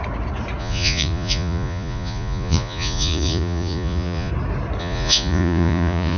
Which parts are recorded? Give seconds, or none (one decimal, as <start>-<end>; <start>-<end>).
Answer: 0.0-0.6; 4.3-4.8